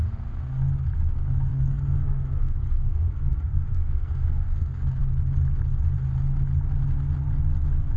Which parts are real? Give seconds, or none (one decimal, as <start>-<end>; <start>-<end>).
0.0-1.5; 5.0-8.0